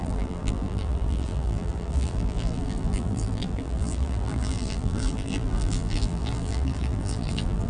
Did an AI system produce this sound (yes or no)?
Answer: yes